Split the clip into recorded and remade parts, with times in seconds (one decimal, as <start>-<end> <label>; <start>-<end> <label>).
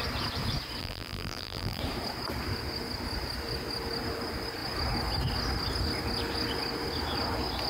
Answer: 0.0-0.8 recorded; 0.8-1.8 remade; 1.8-7.7 recorded